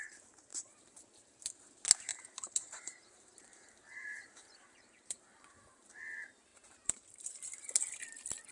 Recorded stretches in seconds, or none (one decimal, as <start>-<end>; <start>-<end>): 0.0-0.5; 1.0-2.1; 6.0-6.5; 7.7-8.5